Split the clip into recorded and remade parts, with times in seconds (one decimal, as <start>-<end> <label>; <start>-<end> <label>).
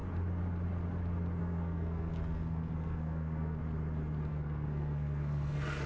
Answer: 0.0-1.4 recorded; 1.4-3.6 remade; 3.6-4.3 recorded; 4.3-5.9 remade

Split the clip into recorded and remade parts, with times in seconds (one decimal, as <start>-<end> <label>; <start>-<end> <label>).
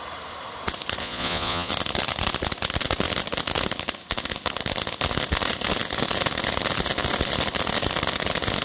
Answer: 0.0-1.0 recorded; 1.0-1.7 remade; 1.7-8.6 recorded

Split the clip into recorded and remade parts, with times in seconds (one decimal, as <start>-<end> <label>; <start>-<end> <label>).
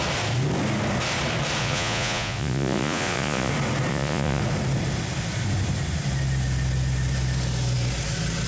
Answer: 0.0-1.6 recorded; 1.6-3.5 remade; 3.5-3.9 recorded; 3.9-4.4 remade; 4.4-8.5 recorded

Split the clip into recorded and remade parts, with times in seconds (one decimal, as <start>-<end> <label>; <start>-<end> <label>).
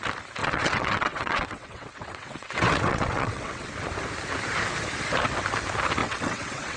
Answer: 0.0-0.4 recorded; 0.4-3.7 remade; 3.7-6.0 recorded; 6.0-6.8 remade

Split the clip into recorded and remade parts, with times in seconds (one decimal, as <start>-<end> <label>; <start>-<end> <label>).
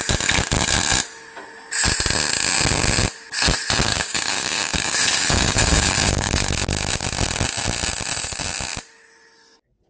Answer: 0.0-3.9 recorded; 3.9-6.5 remade; 6.5-9.9 recorded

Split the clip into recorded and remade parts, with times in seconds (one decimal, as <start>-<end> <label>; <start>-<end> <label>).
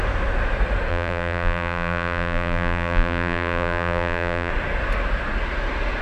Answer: 0.0-0.9 recorded; 0.9-4.5 remade; 4.5-6.0 recorded